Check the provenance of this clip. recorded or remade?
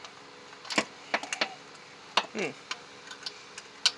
recorded